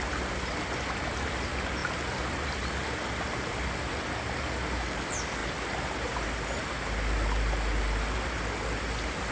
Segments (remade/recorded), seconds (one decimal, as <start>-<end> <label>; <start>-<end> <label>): 0.0-9.3 recorded